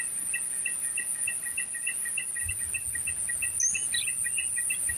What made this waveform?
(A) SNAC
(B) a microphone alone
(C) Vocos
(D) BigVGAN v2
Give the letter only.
B